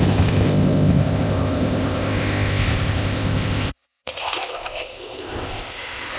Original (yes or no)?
no